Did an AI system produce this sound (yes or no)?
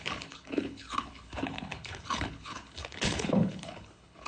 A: yes